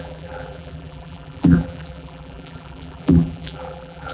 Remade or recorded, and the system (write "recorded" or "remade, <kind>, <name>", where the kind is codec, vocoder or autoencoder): remade, vocoder, BigVGAN v2